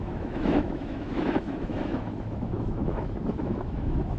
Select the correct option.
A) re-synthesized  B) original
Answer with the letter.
A